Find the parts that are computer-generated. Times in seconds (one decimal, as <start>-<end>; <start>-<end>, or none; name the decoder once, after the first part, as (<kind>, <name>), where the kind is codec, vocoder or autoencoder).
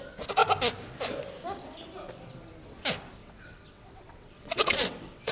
3.2-5.3 (vocoder, WaveNeXt)